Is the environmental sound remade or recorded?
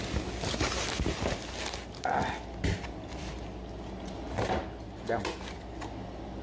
recorded